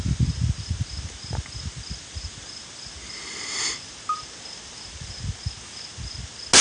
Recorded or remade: recorded